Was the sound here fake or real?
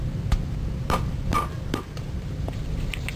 fake